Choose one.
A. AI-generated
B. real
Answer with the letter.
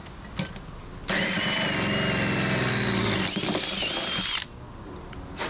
B